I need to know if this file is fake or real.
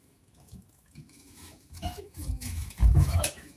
fake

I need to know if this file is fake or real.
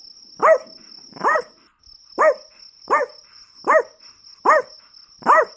real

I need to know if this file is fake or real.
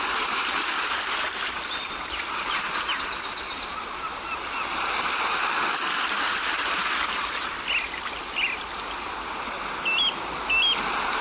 real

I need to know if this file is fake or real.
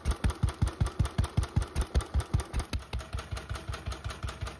real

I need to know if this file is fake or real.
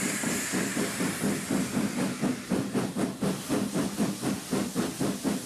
real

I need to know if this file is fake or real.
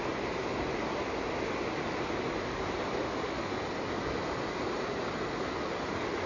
real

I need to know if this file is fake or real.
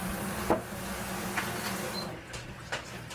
real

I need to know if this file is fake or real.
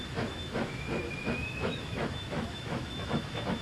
fake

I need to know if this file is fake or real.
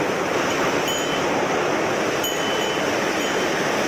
real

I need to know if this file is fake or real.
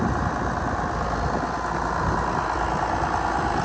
real